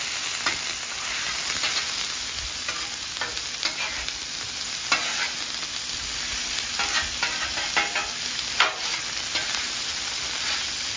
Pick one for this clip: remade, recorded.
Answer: recorded